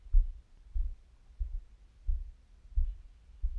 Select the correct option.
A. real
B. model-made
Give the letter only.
A